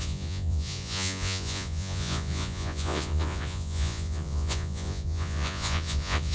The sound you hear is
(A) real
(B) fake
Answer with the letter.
B